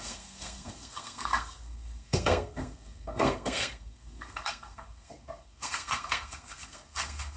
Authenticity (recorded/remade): remade